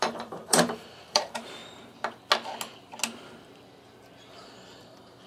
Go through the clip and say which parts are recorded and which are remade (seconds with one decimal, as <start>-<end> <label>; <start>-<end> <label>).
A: 0.0-1.6 remade; 1.6-4.8 recorded; 4.8-5.3 remade